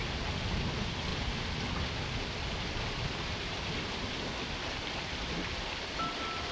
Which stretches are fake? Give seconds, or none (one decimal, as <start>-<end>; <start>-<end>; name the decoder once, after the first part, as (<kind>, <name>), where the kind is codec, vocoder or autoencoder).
none